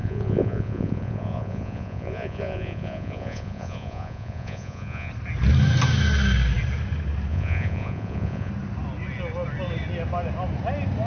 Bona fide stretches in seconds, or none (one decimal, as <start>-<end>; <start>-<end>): 5.1-7.3; 8.5-11.1